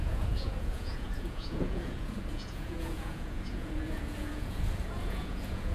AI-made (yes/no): yes